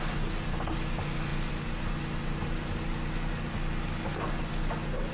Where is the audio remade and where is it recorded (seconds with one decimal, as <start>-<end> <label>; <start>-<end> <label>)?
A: 0.0-5.1 recorded